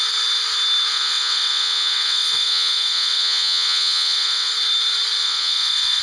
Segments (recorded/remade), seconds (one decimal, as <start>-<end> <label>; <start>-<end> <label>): 0.0-0.9 recorded; 0.9-4.5 remade; 4.5-5.2 recorded; 5.2-6.0 remade